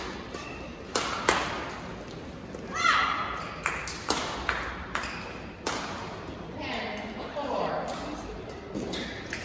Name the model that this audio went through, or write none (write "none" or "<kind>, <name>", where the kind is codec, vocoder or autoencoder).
none